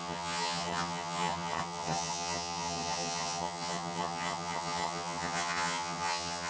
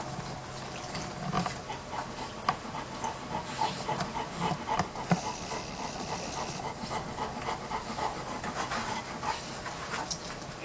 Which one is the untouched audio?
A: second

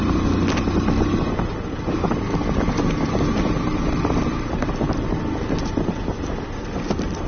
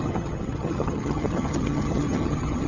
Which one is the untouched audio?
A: first